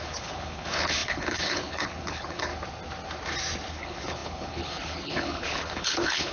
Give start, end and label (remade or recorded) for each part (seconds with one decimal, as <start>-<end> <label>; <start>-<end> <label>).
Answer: 0.0-2.5 remade; 2.5-3.7 recorded; 3.7-6.3 remade